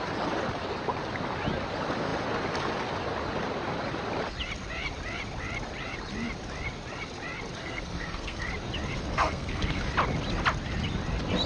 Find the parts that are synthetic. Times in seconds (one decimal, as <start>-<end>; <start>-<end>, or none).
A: 7.6-8.5; 9.1-9.8